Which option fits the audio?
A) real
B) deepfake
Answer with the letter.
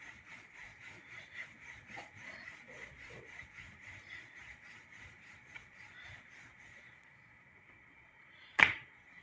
B